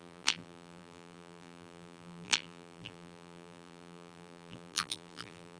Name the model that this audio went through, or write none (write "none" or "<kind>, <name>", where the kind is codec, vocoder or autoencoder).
vocoder, BigVGAN v2